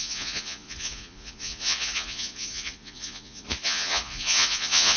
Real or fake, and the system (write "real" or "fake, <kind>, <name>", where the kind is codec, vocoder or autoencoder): fake, vocoder, Vocos